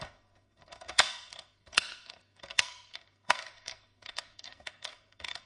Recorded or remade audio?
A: remade